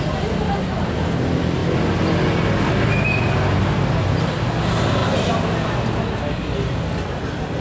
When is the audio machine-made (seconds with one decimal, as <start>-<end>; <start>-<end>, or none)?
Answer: none